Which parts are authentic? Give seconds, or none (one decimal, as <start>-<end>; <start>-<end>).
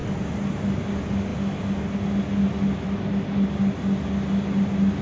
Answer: 0.0-5.0